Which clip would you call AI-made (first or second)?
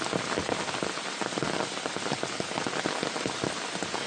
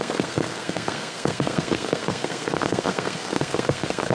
second